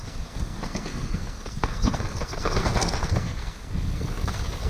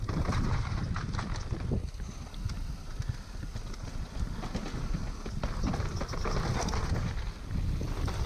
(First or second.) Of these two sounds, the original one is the second